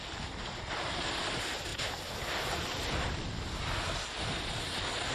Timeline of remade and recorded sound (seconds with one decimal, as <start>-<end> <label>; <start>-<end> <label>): 0.0-5.1 recorded